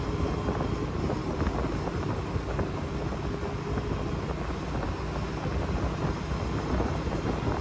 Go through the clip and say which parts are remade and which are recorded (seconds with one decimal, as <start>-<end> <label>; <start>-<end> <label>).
0.0-7.6 recorded